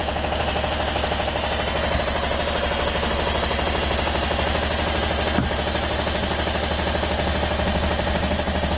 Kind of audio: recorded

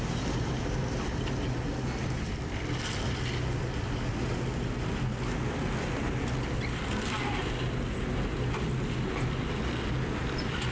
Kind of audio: recorded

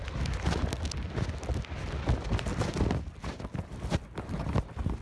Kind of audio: recorded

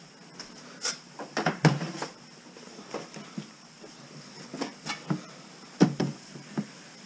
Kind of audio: recorded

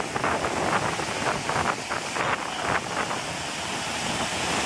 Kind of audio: recorded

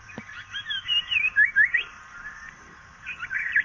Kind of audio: remade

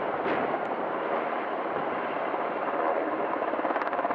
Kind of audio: recorded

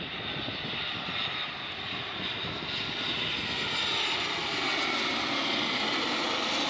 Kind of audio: recorded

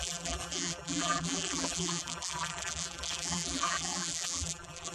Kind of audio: remade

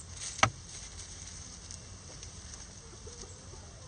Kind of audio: recorded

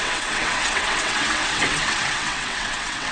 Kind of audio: remade